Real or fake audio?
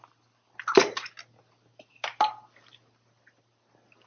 real